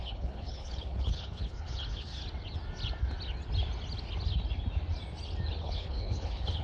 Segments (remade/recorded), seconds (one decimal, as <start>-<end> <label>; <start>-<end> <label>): 0.0-2.2 remade; 2.2-5.6 recorded; 5.6-6.6 remade